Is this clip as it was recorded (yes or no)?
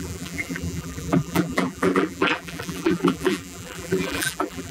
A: no